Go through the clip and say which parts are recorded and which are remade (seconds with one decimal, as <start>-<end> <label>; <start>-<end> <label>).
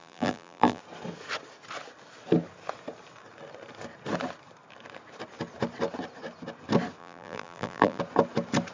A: 0.0-0.8 remade; 0.8-7.0 recorded; 7.0-8.0 remade; 8.0-8.7 recorded